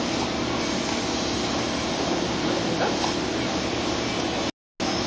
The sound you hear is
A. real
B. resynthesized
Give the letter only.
A